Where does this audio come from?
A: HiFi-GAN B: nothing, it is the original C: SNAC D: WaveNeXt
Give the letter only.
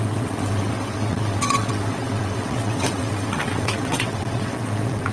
D